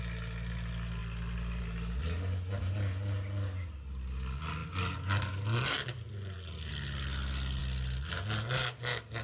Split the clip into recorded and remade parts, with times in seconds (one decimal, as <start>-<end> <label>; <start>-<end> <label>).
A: 0.0-9.2 recorded